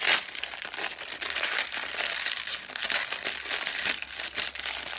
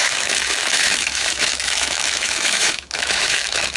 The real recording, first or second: first